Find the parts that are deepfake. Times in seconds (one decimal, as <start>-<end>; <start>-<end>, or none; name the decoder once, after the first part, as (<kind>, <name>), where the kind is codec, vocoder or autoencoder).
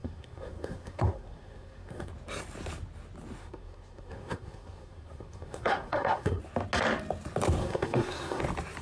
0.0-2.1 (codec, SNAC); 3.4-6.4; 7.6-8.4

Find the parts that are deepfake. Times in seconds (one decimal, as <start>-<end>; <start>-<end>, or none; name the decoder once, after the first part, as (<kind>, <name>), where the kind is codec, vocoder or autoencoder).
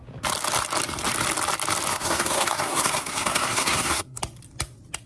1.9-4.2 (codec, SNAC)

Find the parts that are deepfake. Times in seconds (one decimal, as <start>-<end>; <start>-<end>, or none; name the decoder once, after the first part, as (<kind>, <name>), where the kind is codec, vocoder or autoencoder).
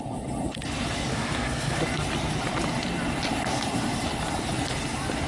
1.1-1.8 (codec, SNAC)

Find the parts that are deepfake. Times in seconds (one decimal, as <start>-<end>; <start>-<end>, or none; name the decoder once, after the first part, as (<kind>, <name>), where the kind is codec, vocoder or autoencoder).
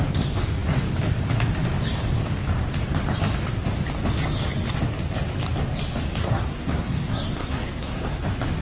6.2-8.2 (codec, SNAC)